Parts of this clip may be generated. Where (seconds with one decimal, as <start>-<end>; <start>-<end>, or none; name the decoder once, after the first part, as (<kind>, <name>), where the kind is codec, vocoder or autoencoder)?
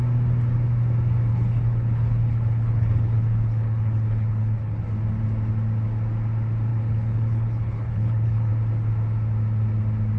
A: 1.3-4.8 (codec, HILCodec); 6.7-8.5